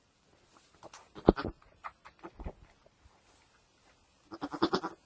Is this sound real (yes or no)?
yes